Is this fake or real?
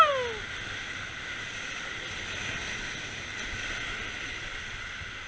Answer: real